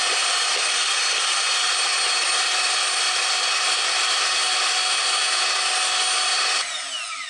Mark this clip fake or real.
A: real